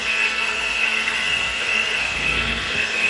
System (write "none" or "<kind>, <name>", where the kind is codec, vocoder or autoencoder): codec, SNAC